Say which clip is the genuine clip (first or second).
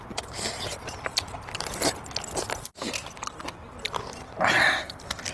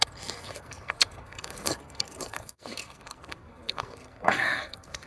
first